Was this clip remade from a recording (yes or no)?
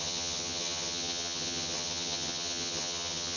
yes